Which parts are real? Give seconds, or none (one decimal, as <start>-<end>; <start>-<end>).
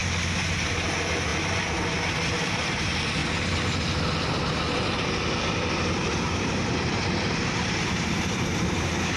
0.0-0.6; 3.2-6.1